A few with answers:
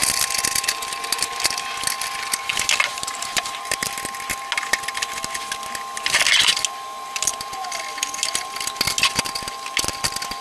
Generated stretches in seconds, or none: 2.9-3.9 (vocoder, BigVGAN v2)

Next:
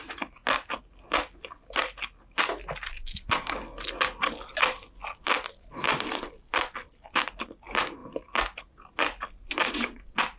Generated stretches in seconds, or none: none

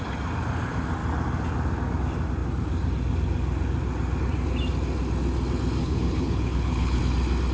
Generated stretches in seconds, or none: 5.8-7.0 (codec, HILCodec)

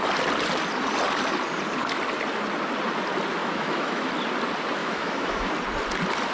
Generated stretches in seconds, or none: 3.4-4.1 (autoencoder, DAC-VAE); 4.8-5.5

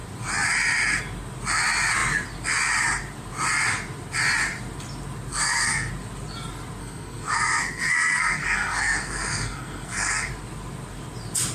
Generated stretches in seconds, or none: 5.3-5.9 (codec, SNAC); 6.8-10.3